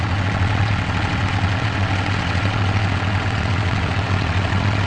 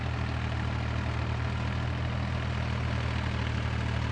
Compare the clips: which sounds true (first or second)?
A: second